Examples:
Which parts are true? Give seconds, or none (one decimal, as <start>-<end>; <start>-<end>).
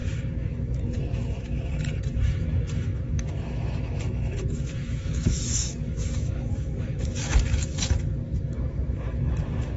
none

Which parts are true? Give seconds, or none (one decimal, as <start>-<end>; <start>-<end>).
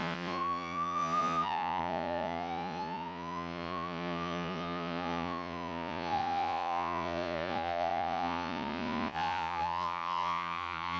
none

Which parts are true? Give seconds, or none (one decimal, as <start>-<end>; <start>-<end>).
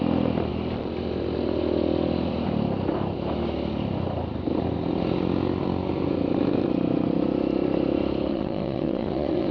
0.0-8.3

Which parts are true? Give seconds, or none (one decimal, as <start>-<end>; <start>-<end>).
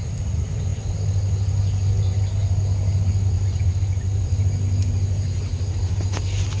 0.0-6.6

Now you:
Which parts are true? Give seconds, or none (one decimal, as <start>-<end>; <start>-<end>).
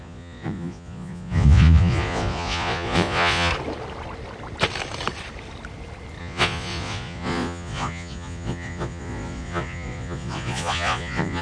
3.5-6.2